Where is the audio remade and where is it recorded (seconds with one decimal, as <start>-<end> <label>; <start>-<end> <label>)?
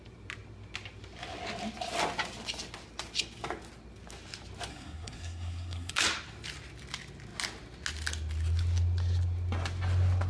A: 0.0-4.7 recorded; 4.7-5.9 remade; 5.9-10.3 recorded